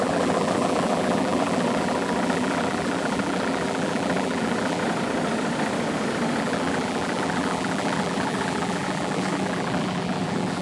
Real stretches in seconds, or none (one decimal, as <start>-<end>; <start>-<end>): 4.8-6.4